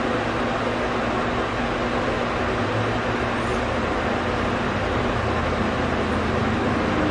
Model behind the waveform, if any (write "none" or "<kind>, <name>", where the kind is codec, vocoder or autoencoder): none